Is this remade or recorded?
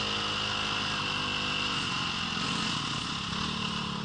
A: recorded